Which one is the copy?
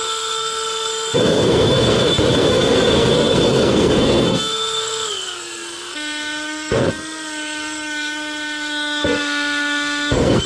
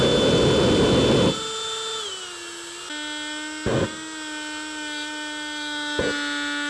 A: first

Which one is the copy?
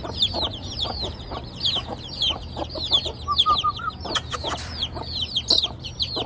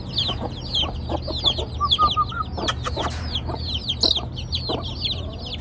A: first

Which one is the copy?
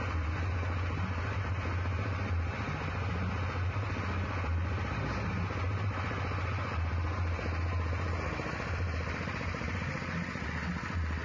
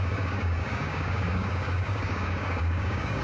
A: second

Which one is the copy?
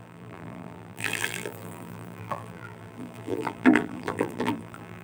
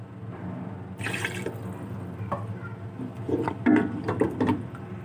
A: first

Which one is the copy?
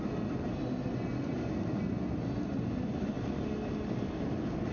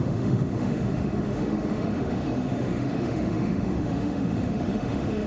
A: second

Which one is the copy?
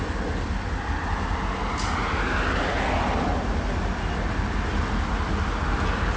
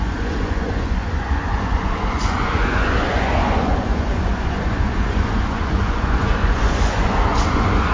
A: second